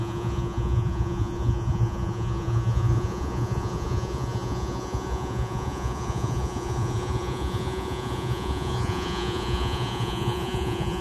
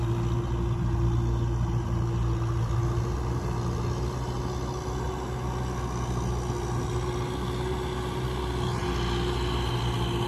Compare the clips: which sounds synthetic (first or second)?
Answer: first